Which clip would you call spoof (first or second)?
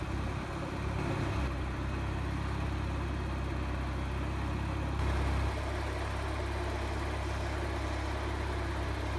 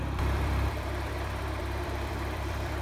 second